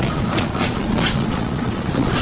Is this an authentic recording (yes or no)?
no